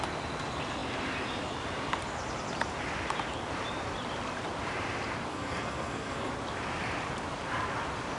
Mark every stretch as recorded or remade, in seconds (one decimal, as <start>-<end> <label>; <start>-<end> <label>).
0.0-5.3 recorded; 5.3-6.3 remade; 6.3-8.2 recorded